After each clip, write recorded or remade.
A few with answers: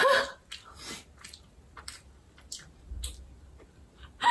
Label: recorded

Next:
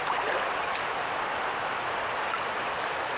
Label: recorded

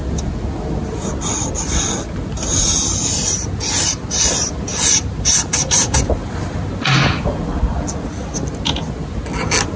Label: recorded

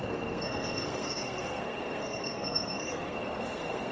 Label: remade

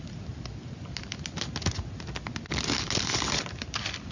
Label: recorded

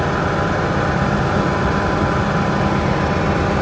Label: recorded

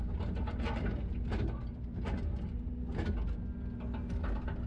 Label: recorded